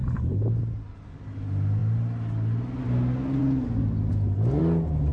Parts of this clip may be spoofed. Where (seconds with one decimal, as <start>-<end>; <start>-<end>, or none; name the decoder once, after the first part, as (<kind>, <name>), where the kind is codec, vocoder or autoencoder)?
none